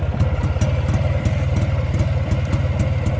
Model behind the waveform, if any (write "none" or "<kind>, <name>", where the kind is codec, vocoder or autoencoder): none